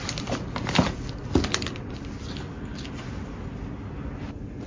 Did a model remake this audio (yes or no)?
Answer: no